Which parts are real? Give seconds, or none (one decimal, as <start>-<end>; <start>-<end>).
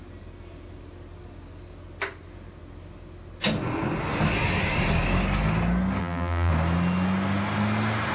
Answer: 0.0-6.0; 6.5-8.1